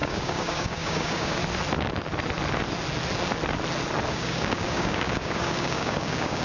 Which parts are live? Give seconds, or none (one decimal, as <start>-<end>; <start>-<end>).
1.4-4.1